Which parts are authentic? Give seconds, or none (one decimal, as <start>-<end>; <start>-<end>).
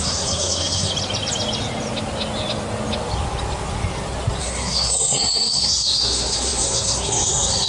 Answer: 0.9-4.4